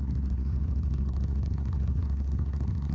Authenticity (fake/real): fake